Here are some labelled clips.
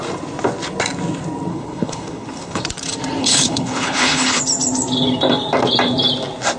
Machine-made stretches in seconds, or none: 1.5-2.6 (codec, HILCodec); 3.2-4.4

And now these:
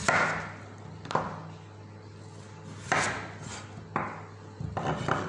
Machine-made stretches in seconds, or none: none

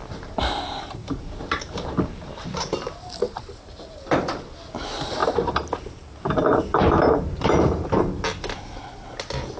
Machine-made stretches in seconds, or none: 1.0-3.4 (vocoder, BigVGAN v2); 5.2-8.0

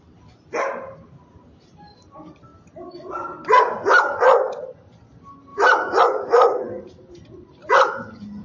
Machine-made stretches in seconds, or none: 5.5-6.0 (vocoder, BigVGAN v2)

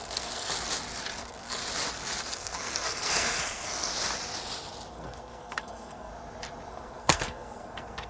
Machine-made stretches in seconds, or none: 0.0-0.5 (codec, SNAC); 1.2-1.6; 2.2-3.9; 4.9-6.1; 6.7-8.1